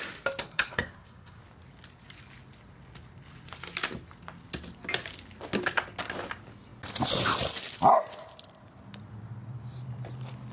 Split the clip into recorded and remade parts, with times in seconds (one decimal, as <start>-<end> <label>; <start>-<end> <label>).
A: 0.0-0.4 recorded; 0.4-1.4 remade; 1.4-10.5 recorded